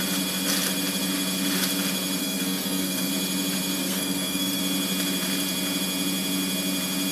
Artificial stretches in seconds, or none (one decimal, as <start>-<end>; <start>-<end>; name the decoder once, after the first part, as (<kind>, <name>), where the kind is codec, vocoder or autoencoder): 2.2-3.1 (codec, SNAC); 3.8-4.6